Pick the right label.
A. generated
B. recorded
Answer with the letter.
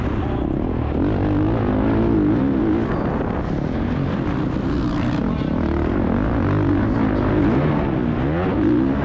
B